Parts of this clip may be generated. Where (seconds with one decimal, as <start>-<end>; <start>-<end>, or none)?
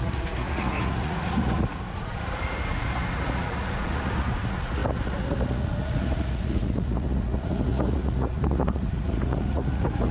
0.0-10.1